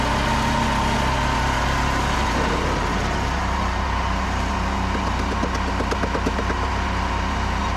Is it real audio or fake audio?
real